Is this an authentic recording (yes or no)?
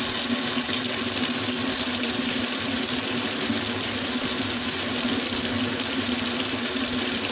yes